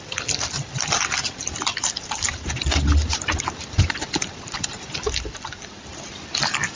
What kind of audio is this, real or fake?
fake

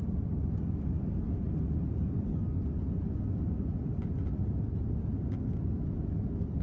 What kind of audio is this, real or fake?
real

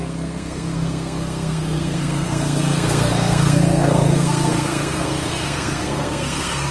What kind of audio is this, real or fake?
fake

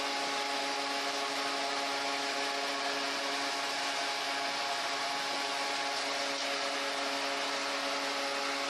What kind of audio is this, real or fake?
real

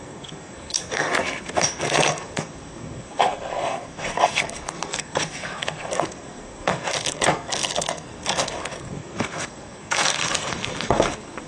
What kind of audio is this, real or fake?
fake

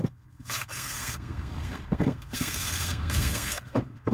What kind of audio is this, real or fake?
fake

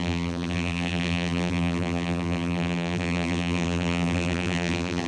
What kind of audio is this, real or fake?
fake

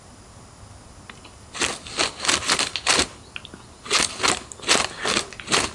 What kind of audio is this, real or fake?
real